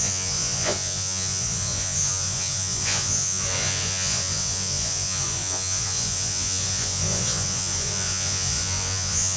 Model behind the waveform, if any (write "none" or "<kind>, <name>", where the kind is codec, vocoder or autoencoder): vocoder, Vocos